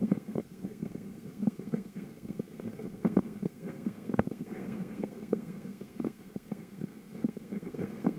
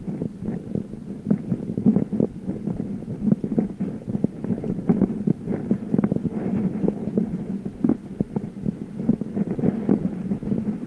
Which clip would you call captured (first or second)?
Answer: second